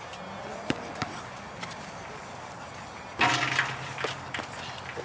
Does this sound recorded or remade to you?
recorded